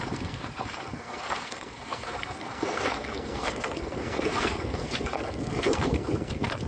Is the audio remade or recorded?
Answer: remade